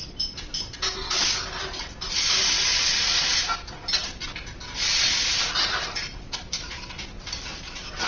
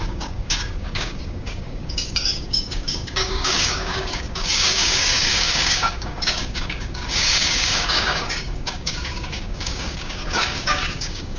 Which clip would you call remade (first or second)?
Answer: second